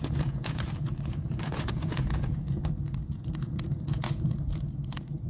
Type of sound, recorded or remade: remade